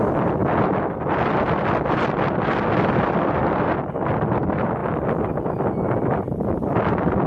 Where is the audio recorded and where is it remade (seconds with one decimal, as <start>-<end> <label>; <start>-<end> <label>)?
0.0-7.3 recorded